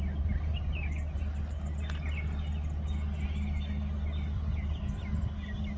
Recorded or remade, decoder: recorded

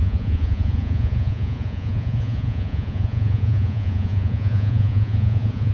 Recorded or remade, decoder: remade, vocoder, Vocos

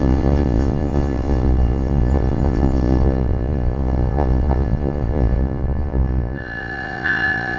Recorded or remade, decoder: remade, vocoder, Vocos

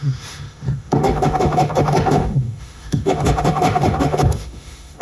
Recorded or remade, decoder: remade, autoencoder, DAC-VAE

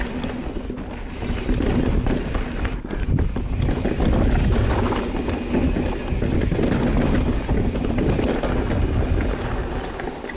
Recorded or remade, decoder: recorded